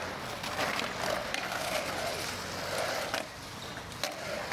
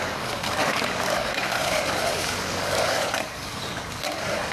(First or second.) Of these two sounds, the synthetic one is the second